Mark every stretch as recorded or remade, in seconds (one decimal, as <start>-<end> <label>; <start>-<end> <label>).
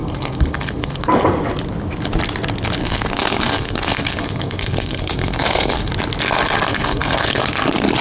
0.0-1.0 remade; 1.0-2.8 recorded; 2.8-5.9 remade; 5.9-6.7 recorded; 6.7-7.4 remade; 7.4-8.0 recorded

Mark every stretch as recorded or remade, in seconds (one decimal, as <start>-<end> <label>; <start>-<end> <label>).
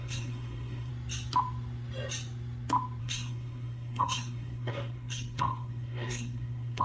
0.0-0.9 remade; 0.9-3.0 recorded; 3.0-6.8 remade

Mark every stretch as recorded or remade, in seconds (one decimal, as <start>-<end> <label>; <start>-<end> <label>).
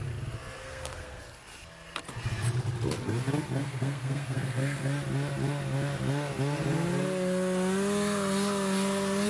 0.0-0.6 recorded; 0.6-1.2 remade; 1.2-3.6 recorded; 3.6-4.8 remade; 4.8-9.3 recorded